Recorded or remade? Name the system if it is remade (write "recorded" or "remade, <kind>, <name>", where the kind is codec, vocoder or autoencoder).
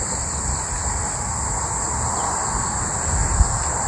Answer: recorded